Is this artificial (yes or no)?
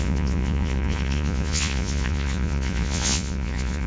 yes